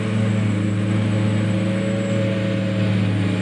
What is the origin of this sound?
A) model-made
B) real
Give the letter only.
B